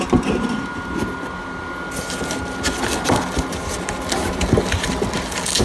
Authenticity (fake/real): real